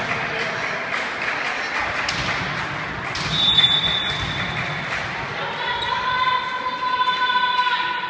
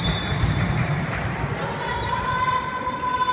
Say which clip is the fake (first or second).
second